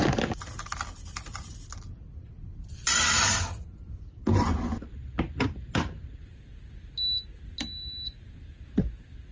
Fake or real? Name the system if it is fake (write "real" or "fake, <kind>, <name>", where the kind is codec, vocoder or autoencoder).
real